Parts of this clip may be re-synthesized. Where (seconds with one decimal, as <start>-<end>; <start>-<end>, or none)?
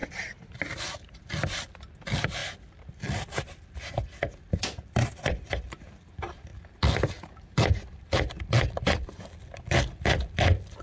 1.3-2.4; 4.5-6.5; 8.7-10.8